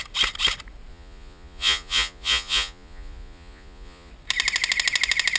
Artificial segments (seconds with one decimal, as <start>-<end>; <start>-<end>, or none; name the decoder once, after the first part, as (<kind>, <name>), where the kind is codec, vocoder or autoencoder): 0.9-4.1 (vocoder, Vocos)